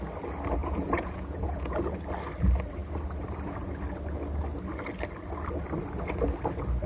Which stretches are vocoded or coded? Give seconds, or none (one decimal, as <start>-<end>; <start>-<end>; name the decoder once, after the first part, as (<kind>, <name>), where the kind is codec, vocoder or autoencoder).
0.6-1.9 (vocoder, Vocos)